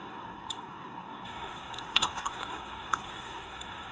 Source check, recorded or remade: remade